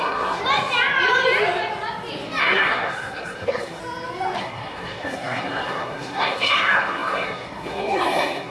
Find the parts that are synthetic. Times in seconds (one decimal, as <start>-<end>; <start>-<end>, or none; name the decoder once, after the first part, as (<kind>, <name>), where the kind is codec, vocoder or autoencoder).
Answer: 0.0-0.4 (codec, SNAC); 2.4-3.8; 4.4-8.5